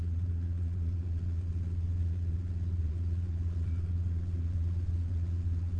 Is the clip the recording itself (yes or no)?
no